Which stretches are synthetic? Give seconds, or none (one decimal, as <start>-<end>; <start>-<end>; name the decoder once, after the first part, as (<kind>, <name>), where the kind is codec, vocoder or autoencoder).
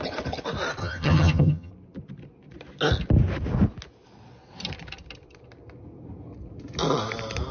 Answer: 0.8-1.7 (vocoder, HiFi-GAN)